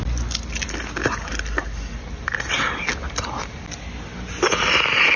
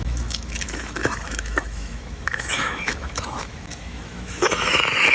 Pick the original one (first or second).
first